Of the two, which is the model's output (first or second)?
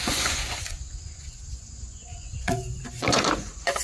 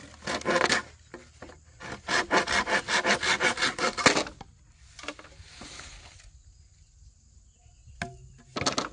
first